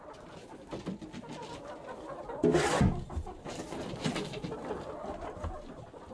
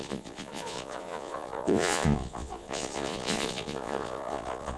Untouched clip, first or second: first